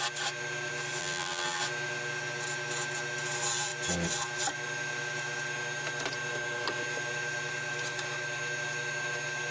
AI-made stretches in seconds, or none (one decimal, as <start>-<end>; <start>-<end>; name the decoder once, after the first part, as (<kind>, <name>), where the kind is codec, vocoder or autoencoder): 1.0-1.6 (vocoder, BigVGAN v2)